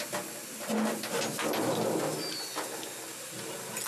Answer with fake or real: real